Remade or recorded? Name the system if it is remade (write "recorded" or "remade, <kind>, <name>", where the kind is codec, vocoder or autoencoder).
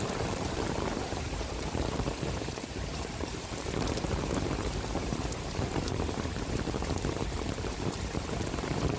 remade, vocoder, BigVGAN v2